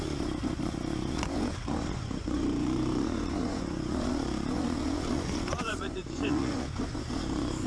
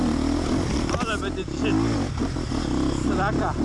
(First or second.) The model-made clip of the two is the first